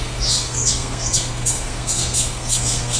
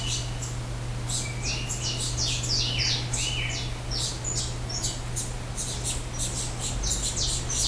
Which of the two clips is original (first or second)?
second